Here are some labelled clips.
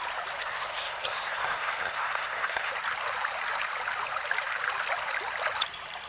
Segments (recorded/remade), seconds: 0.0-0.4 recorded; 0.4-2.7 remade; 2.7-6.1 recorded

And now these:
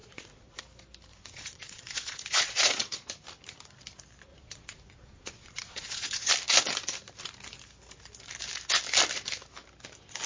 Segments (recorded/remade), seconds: 0.0-0.6 remade; 0.6-1.1 recorded; 1.1-3.1 remade; 3.1-4.3 recorded; 4.3-6.3 remade; 6.3-10.3 recorded

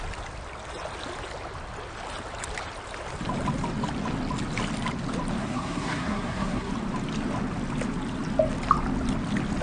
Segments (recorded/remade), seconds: 0.0-5.4 recorded; 5.4-6.7 remade; 6.7-9.6 recorded